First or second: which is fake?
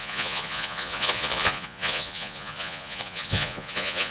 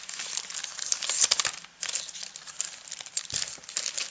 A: first